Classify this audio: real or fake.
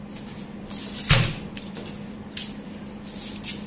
real